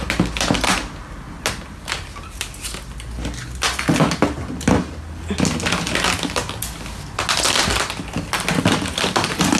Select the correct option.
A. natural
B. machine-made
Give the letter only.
A